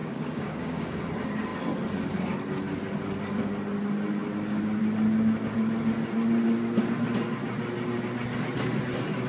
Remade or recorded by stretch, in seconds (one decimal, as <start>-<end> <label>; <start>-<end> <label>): 0.0-1.0 remade; 1.0-9.3 recorded